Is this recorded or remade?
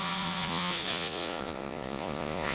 remade